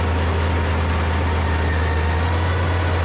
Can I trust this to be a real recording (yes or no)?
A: yes